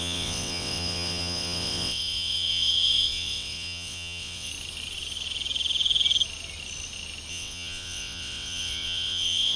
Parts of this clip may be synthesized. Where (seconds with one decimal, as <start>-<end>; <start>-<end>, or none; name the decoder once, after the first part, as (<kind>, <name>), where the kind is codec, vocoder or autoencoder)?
0.0-4.5 (vocoder, WaveNeXt); 7.3-9.6